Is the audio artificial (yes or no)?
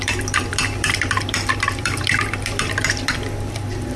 yes